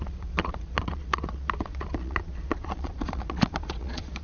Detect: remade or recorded remade